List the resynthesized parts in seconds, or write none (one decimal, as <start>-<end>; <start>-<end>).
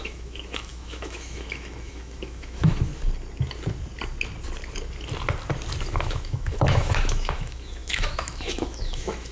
0.0-2.9; 5.9-9.3